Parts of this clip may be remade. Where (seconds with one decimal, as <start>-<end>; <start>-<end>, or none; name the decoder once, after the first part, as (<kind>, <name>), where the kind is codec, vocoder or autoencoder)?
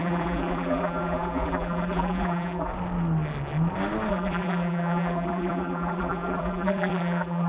0.0-2.7 (vocoder, BigVGAN v2); 4.1-7.5